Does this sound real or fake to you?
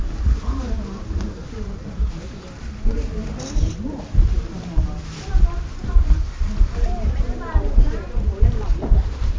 fake